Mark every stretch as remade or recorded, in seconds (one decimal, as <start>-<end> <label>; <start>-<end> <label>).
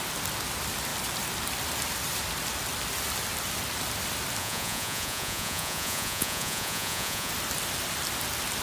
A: 0.0-4.4 recorded; 4.4-7.3 remade; 7.3-8.6 recorded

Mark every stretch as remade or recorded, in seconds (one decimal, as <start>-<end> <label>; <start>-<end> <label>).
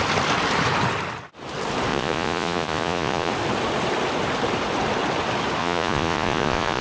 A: 0.0-1.9 recorded; 1.9-3.3 remade; 3.3-5.6 recorded; 5.6-6.8 remade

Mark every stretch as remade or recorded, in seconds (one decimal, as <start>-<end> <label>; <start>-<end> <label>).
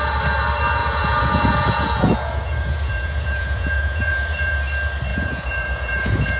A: 0.0-0.8 recorded; 0.8-4.6 remade; 4.6-5.1 recorded; 5.1-6.4 remade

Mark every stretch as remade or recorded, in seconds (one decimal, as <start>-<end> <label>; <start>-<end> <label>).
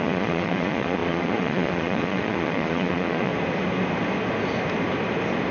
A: 0.0-3.3 remade; 3.3-5.5 recorded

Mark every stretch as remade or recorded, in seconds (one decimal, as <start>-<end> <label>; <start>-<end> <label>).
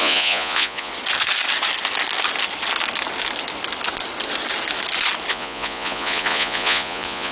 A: 0.0-0.9 remade; 0.9-5.3 recorded; 5.3-7.3 remade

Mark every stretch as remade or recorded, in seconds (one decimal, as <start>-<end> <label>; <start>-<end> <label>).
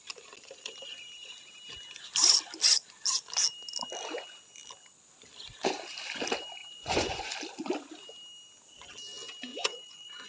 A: 0.0-6.6 recorded; 6.6-7.3 remade; 7.3-9.5 recorded; 9.5-10.3 remade